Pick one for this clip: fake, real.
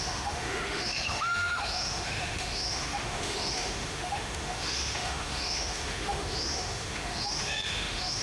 fake